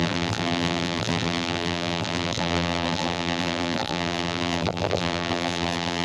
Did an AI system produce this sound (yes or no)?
yes